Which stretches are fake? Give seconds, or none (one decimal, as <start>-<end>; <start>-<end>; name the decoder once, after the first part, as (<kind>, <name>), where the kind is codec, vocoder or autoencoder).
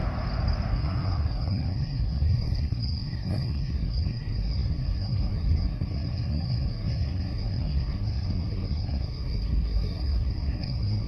0.7-11.1 (codec, SNAC)